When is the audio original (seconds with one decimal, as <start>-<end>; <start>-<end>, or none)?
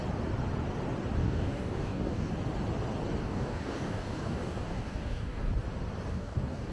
0.0-1.2; 2.3-3.2; 5.4-6.1